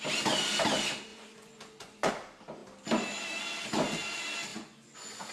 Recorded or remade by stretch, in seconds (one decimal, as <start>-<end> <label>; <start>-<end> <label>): 0.0-1.1 recorded; 1.1-2.1 remade; 2.1-4.5 recorded; 4.5-5.3 remade